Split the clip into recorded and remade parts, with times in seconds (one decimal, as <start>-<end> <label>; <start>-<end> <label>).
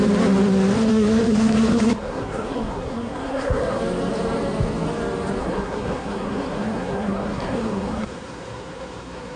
0.0-0.9 recorded; 0.9-3.8 remade; 3.8-5.4 recorded; 5.4-9.4 remade